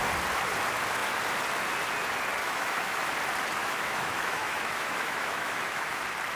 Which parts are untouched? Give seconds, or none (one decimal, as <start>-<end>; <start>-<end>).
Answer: 0.0-2.4; 3.1-3.6; 6.0-6.4